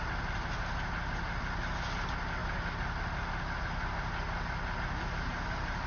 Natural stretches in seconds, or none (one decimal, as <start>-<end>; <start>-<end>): 0.0-5.9